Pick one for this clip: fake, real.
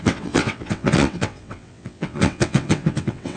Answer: fake